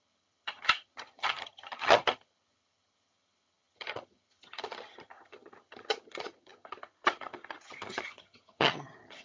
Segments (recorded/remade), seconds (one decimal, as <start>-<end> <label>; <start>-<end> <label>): 0.0-9.2 remade